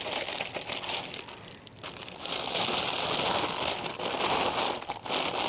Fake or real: real